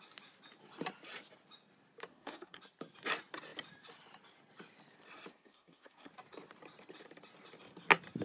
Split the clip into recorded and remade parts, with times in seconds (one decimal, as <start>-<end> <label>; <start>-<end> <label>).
0.0-2.1 recorded; 2.1-2.6 remade; 2.6-5.3 recorded; 5.3-6.1 remade; 6.1-8.2 recorded